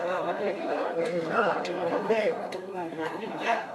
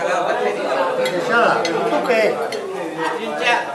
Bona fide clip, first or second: second